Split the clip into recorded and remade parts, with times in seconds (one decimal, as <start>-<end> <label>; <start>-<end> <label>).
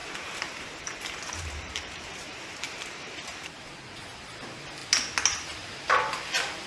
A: 0.0-3.5 remade; 3.5-6.7 recorded